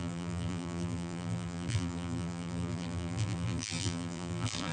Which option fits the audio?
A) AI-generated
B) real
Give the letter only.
A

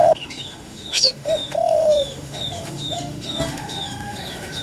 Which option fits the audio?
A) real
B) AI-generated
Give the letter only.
B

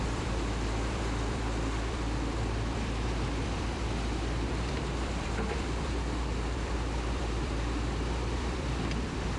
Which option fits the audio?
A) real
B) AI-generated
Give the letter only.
B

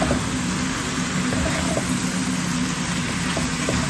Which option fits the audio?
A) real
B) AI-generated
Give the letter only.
A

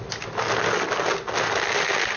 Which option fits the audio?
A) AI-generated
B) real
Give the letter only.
B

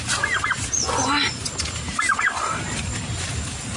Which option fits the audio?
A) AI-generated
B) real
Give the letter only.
B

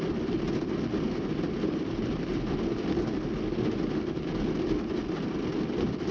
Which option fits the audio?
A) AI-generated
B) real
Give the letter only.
B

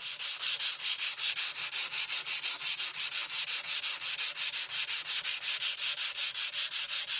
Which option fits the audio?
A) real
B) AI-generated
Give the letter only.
A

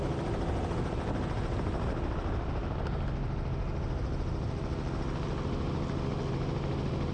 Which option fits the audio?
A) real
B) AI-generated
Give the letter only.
A